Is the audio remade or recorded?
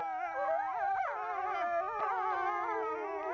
recorded